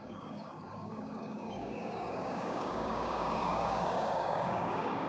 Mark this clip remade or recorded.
remade